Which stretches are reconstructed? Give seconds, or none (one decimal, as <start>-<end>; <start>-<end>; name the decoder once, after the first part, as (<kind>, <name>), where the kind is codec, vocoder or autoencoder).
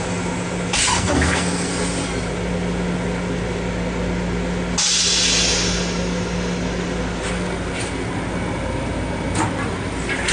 0.9-1.7 (codec, SNAC)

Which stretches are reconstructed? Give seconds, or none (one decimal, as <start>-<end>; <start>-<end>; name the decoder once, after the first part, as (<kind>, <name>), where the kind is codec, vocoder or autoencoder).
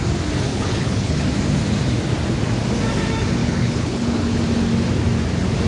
0.5-1.2 (codec, HILCodec); 3.4-4.4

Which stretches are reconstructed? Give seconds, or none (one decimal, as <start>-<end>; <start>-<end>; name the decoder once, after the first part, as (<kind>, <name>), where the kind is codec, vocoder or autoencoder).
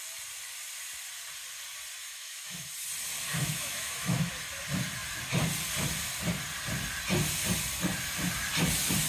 2.0-2.7 (autoencoder, DAC-VAE); 3.3-4.3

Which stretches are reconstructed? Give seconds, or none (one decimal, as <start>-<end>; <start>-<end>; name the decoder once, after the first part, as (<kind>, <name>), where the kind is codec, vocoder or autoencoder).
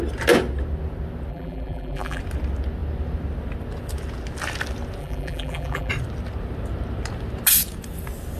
1.3-2.2 (vocoder, BigVGAN v2); 5.0-5.9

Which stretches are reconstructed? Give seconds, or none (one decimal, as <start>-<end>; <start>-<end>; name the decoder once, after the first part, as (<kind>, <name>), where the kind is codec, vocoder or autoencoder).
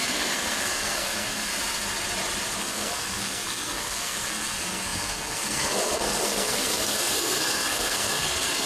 0.0-1.5 (codec, SNAC); 2.6-8.7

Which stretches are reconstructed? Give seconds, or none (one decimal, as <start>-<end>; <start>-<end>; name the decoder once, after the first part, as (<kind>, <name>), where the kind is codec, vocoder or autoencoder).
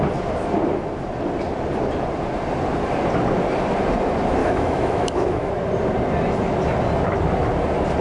4.4-5.5 (autoencoder, DAC-VAE)